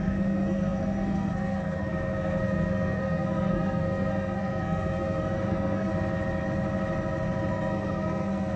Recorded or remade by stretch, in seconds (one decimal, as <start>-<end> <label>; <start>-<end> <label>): 0.0-5.9 remade; 5.9-7.5 recorded; 7.5-8.6 remade